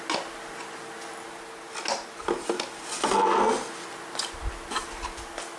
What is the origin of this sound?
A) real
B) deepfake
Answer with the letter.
A